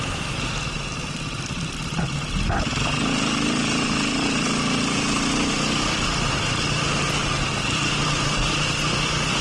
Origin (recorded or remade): recorded